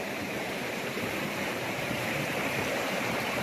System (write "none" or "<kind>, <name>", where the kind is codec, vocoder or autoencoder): vocoder, BigVGAN v2